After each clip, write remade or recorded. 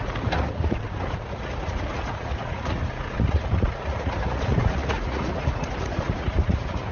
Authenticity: remade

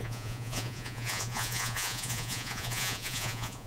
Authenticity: remade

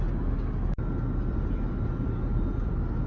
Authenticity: recorded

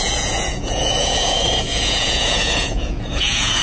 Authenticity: remade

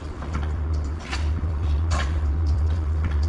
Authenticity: remade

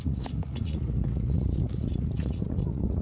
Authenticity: remade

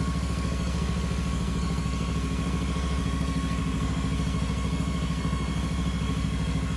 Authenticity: remade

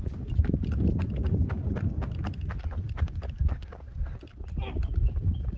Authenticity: recorded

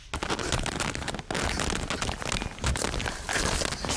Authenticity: recorded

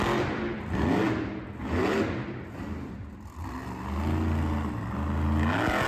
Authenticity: recorded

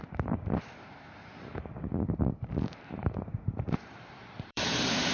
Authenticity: remade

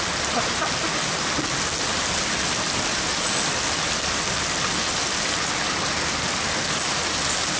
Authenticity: recorded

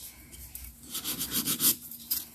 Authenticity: remade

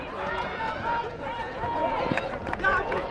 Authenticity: remade